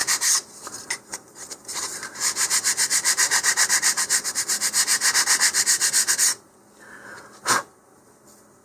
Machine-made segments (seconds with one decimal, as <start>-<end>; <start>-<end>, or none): 0.0-4.4